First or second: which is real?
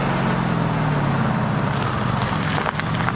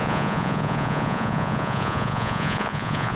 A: first